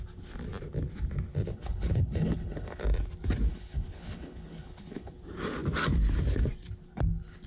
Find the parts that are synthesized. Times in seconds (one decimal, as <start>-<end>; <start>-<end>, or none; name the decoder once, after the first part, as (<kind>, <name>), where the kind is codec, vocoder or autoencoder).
1.5-2.8 (codec, HILCodec); 3.5-5.1